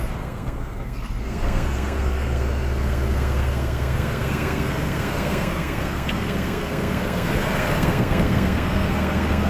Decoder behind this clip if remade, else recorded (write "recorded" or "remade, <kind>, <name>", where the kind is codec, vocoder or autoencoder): remade, codec, SNAC